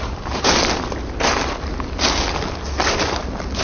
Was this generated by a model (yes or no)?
no